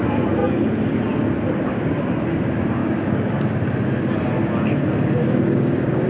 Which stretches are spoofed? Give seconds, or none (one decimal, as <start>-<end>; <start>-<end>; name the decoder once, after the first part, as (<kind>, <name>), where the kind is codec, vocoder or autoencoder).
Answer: 2.8-3.3 (codec, DAC); 5.2-6.1